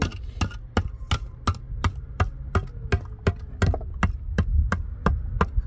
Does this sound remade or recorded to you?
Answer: recorded